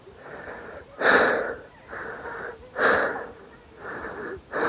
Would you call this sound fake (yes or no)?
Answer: no